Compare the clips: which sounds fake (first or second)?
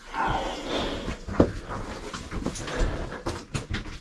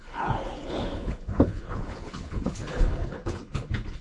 second